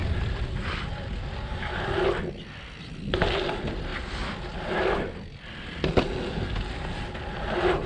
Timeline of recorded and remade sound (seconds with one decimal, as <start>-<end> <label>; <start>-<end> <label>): 0.0-7.9 recorded